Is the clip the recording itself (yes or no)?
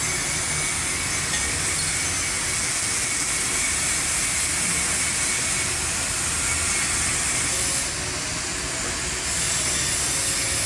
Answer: yes